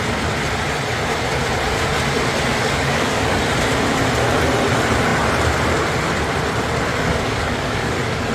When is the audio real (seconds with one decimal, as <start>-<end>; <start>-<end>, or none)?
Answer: 0.0-2.6; 3.4-6.9